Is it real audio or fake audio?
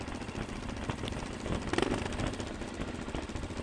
real